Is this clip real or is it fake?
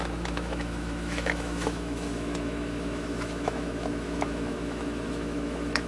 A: fake